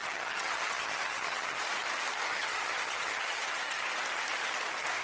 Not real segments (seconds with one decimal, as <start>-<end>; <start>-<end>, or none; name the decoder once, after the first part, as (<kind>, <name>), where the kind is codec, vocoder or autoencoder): 0.0-1.6 (vocoder, HiFi-GAN); 2.3-3.8